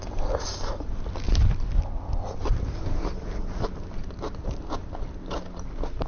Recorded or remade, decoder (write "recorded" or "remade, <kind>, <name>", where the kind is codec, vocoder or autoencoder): recorded